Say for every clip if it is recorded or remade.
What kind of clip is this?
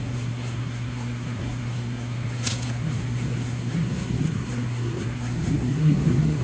remade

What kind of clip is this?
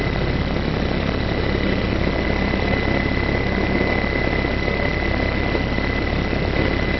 recorded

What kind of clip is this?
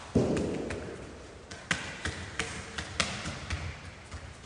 recorded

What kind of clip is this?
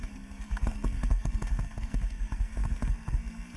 remade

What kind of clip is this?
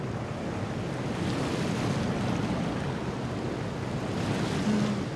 recorded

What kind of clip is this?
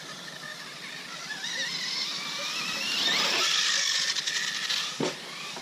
recorded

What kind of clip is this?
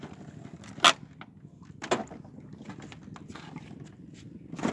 recorded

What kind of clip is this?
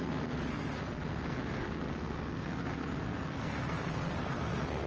remade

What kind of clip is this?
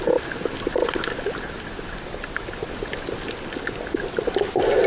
recorded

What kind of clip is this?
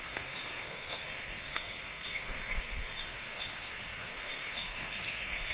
remade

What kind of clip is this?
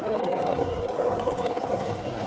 remade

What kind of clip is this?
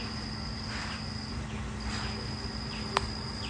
recorded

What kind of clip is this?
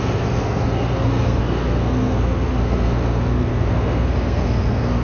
remade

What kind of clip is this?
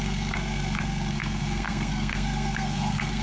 remade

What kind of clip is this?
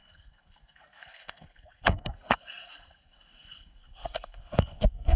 remade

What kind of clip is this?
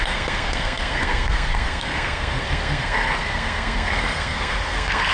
remade